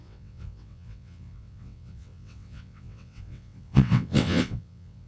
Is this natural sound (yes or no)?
no